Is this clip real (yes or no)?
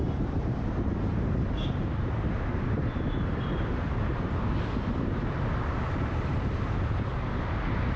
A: no